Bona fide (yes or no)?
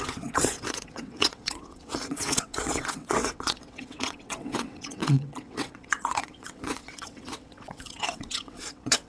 no